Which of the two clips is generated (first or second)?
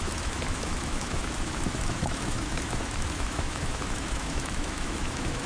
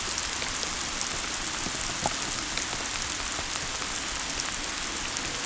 first